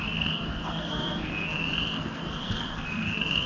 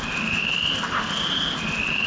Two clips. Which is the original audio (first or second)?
second